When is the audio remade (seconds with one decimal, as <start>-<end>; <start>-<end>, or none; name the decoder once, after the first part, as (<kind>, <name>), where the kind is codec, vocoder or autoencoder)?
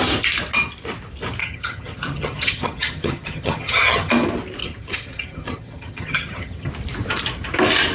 1.4-4.1 (vocoder, HiFi-GAN); 4.6-6.7